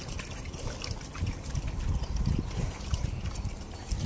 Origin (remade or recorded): recorded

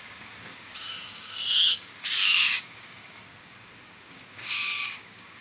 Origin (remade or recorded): remade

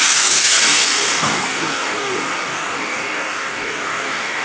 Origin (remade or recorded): remade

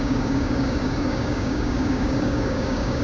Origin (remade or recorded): remade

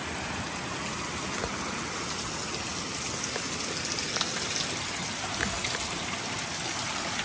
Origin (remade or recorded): recorded